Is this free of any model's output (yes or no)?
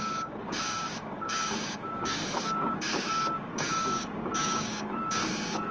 no